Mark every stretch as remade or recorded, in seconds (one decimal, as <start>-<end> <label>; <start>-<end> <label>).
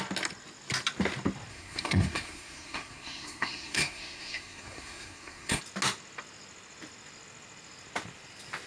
0.0-1.5 recorded; 1.5-5.6 remade; 5.6-8.7 recorded